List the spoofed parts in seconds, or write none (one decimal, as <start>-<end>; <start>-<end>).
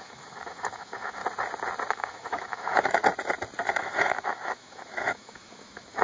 0.0-1.2; 1.9-3.0; 3.8-6.0